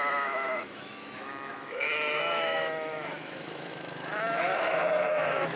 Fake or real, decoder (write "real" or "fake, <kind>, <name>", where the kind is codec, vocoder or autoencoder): fake, autoencoder, DAC-VAE